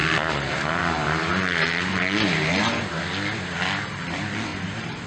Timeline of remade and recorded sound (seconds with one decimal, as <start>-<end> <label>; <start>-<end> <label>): 0.0-1.3 recorded; 1.3-3.0 remade; 3.0-4.5 recorded; 4.5-5.1 remade